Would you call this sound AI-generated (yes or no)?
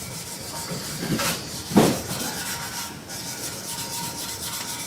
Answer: yes